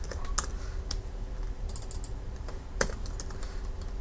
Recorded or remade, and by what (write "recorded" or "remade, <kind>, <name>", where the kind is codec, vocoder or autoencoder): recorded